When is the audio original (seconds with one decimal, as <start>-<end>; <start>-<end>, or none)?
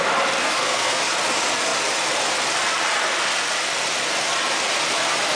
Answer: 0.0-0.4; 1.0-5.4